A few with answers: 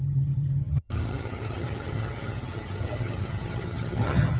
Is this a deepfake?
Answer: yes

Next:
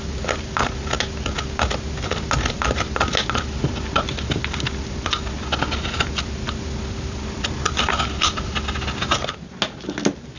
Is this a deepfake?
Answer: no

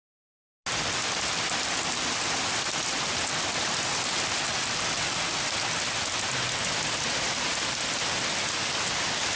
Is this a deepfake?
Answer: no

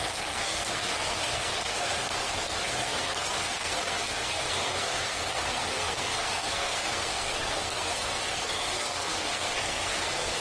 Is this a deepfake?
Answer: yes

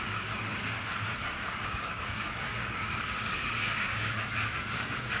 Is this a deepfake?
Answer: yes